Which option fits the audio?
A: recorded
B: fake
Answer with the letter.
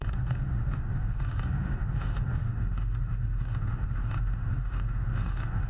B